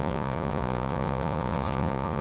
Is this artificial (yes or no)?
yes